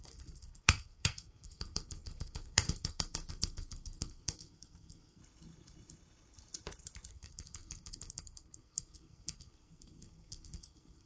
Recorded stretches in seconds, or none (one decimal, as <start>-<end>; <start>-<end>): 5.2-7.1